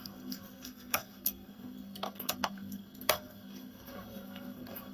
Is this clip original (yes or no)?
no